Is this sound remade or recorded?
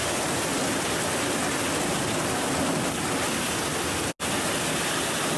recorded